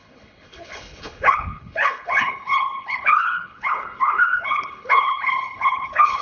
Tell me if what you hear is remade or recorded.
remade